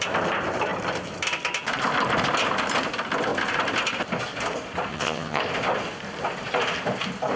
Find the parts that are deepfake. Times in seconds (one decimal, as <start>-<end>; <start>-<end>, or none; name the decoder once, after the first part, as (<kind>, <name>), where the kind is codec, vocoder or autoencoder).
4.9-5.4 (vocoder, HiFi-GAN)